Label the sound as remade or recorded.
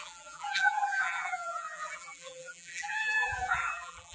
remade